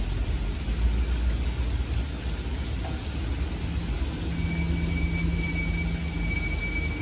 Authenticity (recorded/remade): recorded